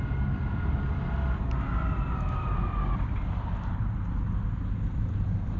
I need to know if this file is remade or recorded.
recorded